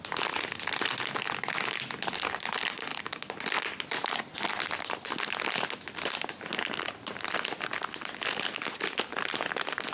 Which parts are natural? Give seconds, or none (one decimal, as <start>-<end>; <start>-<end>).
0.0-9.9